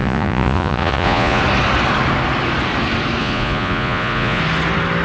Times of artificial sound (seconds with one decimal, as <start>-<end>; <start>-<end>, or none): 0.0-1.4; 3.2-4.4